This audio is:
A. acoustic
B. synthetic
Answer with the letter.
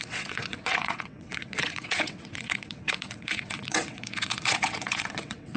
B